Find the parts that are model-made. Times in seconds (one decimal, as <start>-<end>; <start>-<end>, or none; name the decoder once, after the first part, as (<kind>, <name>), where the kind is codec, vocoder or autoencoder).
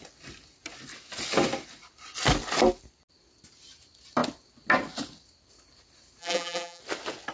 6.2-6.8 (vocoder, BigVGAN v2)